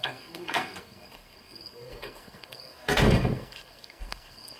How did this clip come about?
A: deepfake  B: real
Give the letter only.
A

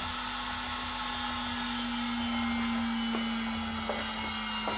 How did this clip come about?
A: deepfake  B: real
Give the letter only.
B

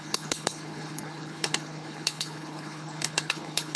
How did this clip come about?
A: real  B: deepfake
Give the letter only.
B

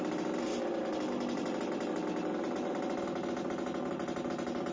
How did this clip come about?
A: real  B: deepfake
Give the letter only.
A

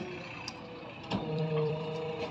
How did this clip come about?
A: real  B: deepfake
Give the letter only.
B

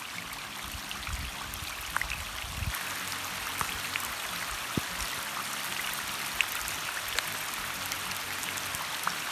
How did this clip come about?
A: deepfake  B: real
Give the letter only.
B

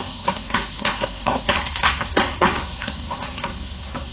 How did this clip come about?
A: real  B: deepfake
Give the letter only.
B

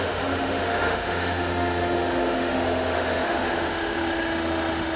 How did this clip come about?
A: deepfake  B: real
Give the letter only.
A